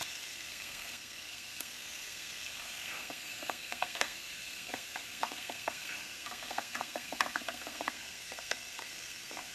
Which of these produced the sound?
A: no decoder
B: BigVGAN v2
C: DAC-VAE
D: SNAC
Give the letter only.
D